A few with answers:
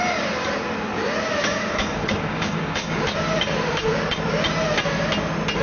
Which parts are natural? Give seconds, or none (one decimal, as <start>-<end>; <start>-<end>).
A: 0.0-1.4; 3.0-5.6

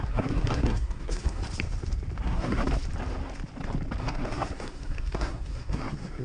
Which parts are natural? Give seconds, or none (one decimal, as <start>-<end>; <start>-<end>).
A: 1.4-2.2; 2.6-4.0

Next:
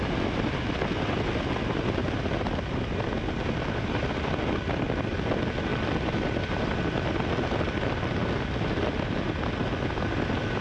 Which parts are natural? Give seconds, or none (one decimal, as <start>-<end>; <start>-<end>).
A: 0.0-10.6

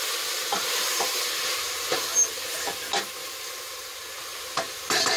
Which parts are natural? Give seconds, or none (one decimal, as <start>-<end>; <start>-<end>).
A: 2.1-3.4

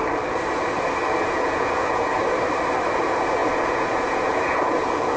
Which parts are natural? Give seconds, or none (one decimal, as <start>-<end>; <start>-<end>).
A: 0.0-1.2; 2.2-3.0

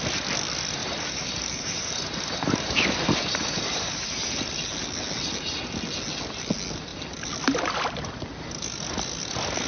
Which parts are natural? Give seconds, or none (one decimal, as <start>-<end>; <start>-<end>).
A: 0.0-0.8; 4.5-9.7